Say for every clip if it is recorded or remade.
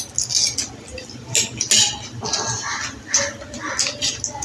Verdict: recorded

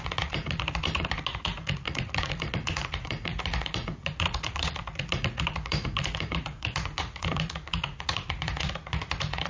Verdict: remade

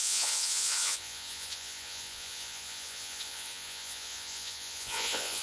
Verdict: remade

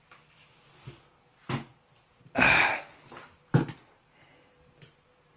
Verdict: recorded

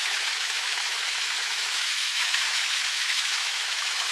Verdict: remade